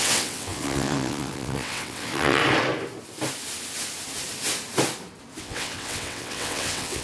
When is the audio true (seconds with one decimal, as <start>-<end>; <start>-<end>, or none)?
2.4-5.4